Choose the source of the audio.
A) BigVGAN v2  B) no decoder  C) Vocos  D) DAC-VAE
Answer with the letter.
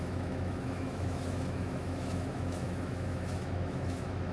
D